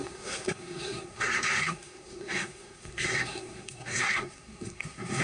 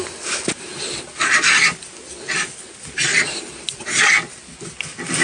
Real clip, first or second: second